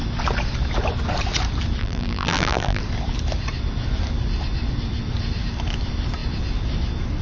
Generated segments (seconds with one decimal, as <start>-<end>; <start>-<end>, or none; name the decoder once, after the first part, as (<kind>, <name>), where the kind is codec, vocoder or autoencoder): 1.8-2.8 (vocoder, BigVGAN v2)